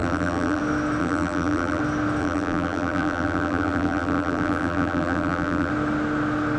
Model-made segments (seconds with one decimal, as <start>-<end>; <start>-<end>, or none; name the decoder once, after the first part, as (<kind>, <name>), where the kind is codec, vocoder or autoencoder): 0.0-0.6 (vocoder, BigVGAN v2); 1.0-1.8; 2.2-5.7